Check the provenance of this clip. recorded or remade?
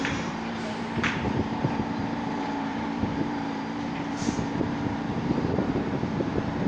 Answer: remade